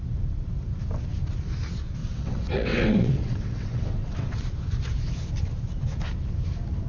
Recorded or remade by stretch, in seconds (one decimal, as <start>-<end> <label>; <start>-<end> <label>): 0.0-2.0 recorded; 2.0-4.4 remade; 4.4-6.9 recorded